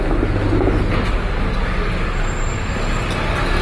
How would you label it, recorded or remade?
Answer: recorded